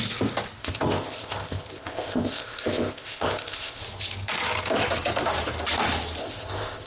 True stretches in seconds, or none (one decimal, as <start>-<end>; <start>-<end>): 0.0-0.6; 3.8-6.2